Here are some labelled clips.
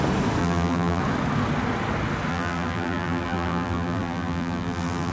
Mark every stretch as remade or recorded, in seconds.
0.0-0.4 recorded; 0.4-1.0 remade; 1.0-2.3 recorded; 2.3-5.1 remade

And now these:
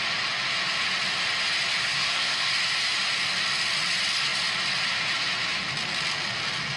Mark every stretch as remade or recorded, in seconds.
0.0-1.8 recorded; 1.8-2.5 remade; 2.5-6.8 recorded

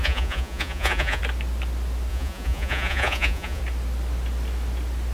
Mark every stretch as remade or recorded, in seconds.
0.0-1.2 remade; 1.2-2.1 recorded; 2.1-3.6 remade; 3.6-5.1 recorded

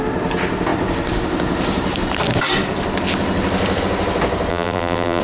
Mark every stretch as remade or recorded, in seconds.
0.0-4.5 recorded; 4.5-5.2 remade